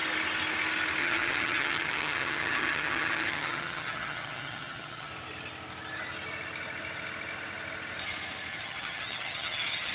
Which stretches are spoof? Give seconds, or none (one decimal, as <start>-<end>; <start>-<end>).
1.0-5.1; 8.5-9.9